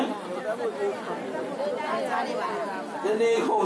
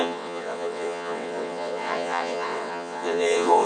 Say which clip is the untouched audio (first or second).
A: first